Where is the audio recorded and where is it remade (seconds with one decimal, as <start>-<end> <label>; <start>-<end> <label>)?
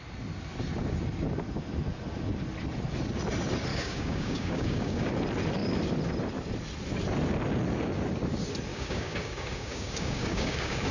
0.0-3.7 recorded; 3.7-5.1 remade; 5.1-8.7 recorded; 8.7-10.9 remade